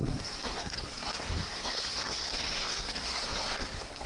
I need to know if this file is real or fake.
fake